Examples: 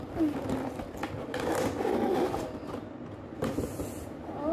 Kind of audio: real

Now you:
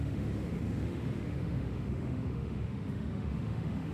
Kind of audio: fake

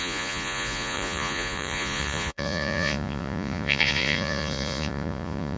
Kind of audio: fake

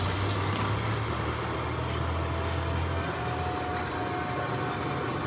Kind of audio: real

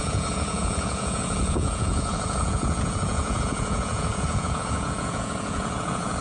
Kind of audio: fake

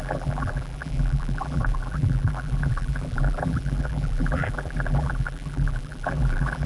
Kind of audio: fake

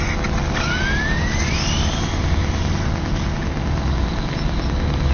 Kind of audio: real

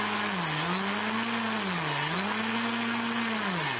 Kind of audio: real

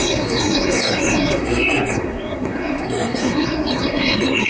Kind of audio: fake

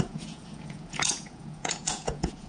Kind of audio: fake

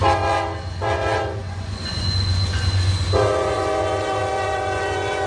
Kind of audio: fake